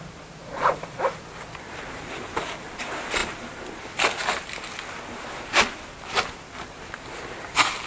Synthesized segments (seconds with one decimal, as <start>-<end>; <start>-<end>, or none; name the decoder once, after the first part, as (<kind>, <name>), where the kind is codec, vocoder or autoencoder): 0.4-1.2 (vocoder, BigVGAN v2); 2.3-2.8